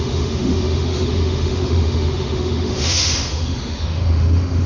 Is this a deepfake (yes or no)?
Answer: yes